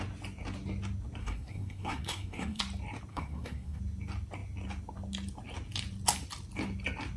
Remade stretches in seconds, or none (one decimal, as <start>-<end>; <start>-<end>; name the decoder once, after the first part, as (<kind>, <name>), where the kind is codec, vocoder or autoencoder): 1.2-2.6 (codec, SNAC); 3.1-3.8